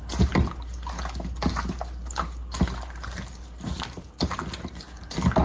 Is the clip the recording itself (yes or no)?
yes